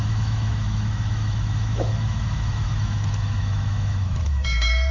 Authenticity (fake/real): fake